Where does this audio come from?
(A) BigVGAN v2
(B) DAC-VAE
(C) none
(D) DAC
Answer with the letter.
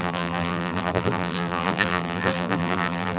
A